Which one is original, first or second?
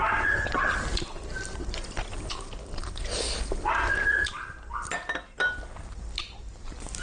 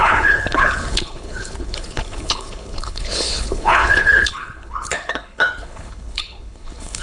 first